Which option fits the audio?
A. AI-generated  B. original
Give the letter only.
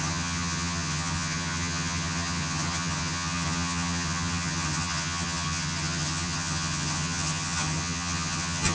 A